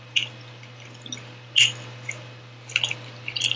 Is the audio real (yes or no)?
yes